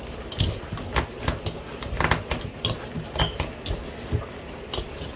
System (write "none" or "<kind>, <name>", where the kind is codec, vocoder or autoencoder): none